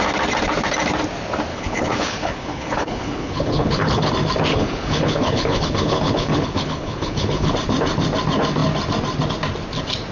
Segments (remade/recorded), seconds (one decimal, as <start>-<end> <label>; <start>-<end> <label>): 0.0-1.5 recorded; 1.5-4.1 remade; 4.1-4.5 recorded; 4.5-7.5 remade; 7.5-10.1 recorded